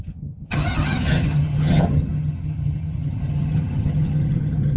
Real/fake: fake